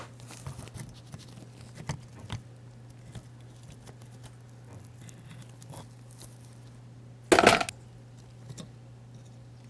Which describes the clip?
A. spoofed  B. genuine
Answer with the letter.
B